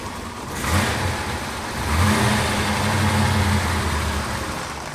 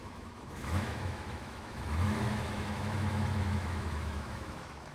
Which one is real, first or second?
first